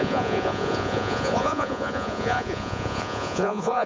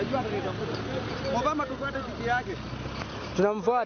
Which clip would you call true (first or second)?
second